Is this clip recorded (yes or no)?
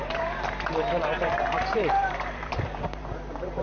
no